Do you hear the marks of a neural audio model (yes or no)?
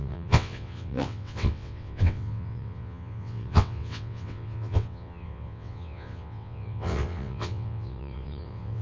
yes